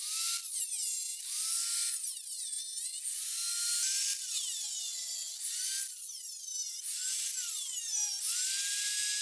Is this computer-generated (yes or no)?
no